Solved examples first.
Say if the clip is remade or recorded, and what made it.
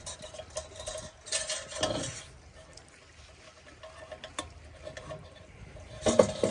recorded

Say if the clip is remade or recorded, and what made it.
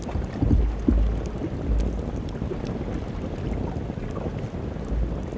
recorded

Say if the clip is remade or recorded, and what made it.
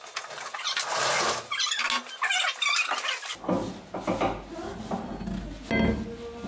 recorded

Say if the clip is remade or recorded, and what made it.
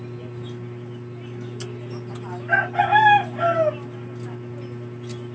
recorded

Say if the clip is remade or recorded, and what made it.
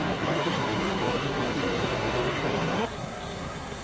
remade, codec, SNAC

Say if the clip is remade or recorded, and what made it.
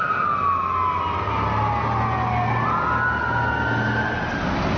recorded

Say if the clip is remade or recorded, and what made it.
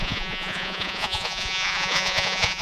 remade, vocoder, Vocos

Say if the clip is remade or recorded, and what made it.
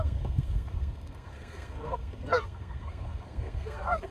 remade, codec, SNAC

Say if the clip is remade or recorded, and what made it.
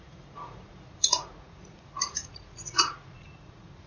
remade, vocoder, Vocos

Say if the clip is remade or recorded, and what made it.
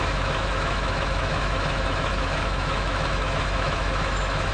remade, autoencoder, DAC-VAE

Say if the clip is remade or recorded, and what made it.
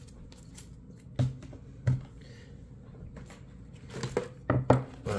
recorded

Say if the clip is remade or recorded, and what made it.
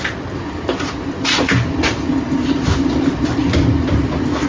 recorded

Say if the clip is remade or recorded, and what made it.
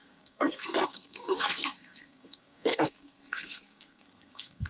remade, codec, SNAC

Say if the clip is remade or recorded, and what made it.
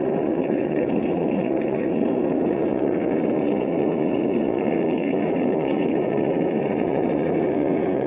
remade, vocoder, Vocos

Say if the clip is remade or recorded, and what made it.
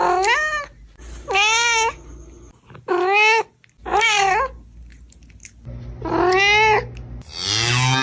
recorded